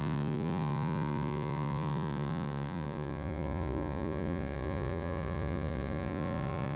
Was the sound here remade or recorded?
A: remade